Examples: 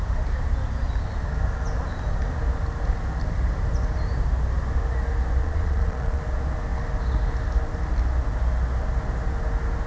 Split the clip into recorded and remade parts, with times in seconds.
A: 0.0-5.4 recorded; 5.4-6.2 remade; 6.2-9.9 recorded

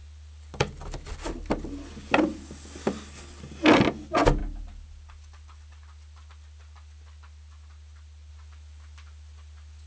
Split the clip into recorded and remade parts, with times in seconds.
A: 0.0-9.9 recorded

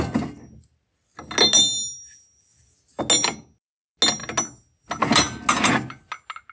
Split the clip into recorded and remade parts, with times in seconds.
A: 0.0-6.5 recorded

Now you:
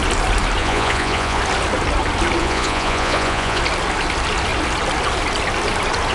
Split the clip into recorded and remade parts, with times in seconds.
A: 0.0-0.6 recorded; 0.6-1.4 remade; 1.4-2.4 recorded; 2.4-3.6 remade; 3.6-6.1 recorded

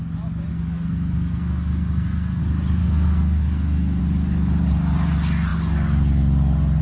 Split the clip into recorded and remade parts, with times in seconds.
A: 0.0-0.5 recorded; 0.5-2.4 remade; 2.4-2.8 recorded; 2.8-4.0 remade; 4.0-6.8 recorded

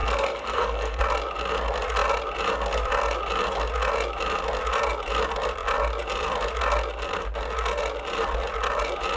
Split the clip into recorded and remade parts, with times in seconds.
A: 0.0-1.0 remade; 1.0-9.2 recorded